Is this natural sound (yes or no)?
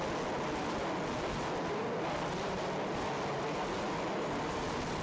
yes